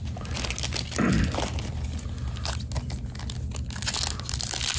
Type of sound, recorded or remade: recorded